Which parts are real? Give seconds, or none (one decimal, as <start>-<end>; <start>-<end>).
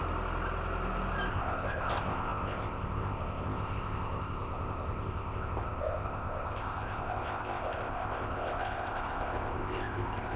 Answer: 0.0-1.3